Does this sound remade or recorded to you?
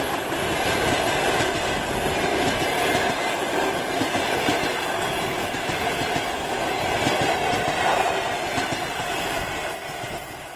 recorded